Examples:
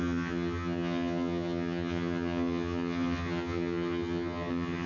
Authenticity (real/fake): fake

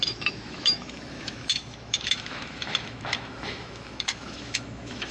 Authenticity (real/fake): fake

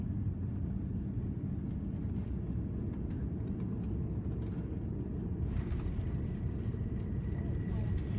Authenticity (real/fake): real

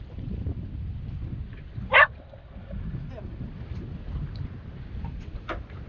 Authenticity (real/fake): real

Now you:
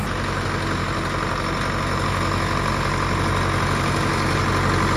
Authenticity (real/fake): real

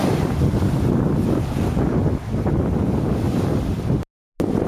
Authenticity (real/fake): real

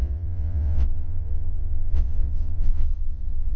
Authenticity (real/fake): fake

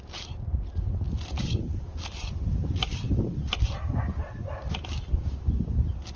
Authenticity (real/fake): real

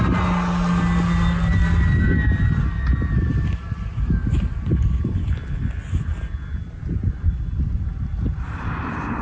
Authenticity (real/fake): real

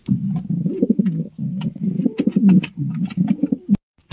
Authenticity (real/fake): real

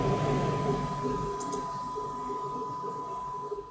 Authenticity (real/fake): real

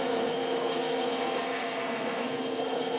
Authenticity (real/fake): fake